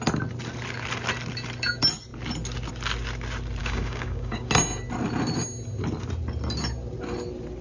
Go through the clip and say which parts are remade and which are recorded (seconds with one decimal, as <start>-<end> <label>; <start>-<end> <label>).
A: 0.0-3.6 recorded; 3.6-4.5 remade; 4.5-7.6 recorded